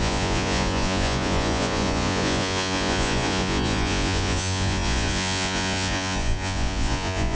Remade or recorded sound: remade